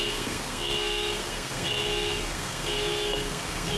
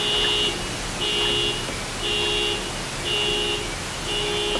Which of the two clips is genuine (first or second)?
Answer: second